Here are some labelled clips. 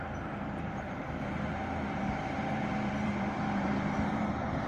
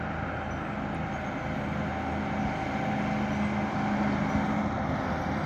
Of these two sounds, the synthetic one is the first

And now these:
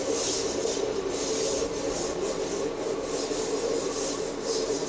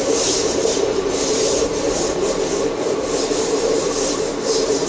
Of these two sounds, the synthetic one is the second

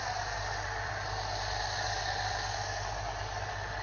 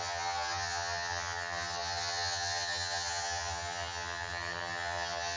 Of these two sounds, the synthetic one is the second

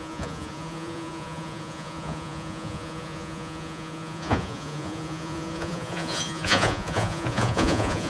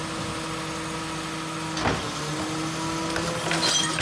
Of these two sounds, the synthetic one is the first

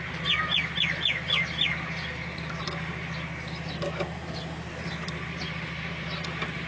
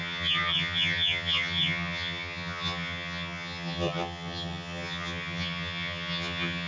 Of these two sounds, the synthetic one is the second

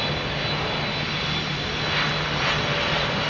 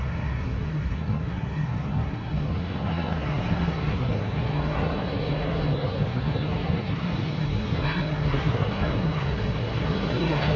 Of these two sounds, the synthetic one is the second